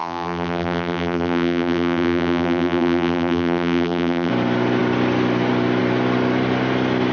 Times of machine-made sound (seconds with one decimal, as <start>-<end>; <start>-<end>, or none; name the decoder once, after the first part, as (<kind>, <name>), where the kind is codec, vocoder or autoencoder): 0.0-4.3 (vocoder, BigVGAN v2)